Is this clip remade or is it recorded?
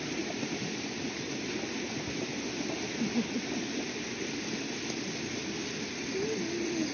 recorded